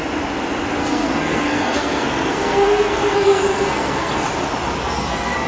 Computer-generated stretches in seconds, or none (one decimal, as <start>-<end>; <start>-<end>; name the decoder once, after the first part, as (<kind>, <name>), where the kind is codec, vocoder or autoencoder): 0.8-4.1 (codec, SNAC); 4.8-5.5